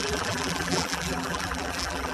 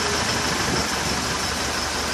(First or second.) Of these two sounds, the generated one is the first